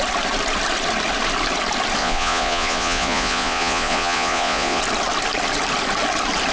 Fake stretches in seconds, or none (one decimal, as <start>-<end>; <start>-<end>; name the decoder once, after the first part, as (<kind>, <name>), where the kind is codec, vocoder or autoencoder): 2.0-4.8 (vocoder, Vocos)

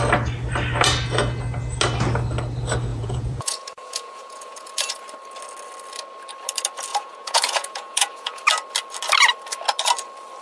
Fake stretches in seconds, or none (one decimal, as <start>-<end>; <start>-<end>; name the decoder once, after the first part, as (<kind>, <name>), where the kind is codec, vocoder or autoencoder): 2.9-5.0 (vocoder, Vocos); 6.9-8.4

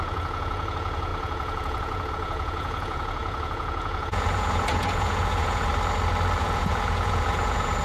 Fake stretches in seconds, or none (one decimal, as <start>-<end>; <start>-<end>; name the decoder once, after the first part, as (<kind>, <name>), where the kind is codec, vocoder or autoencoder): 0.0-5.7 (vocoder, Vocos); 6.4-7.8

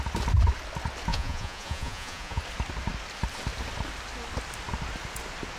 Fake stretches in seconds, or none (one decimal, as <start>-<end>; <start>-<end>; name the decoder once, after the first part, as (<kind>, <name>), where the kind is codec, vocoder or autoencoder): 1.1-2.4 (vocoder, Vocos)

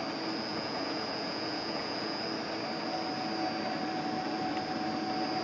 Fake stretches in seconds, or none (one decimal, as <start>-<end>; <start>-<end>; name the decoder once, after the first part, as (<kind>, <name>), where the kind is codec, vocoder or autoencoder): 0.5-2.2 (vocoder, Vocos)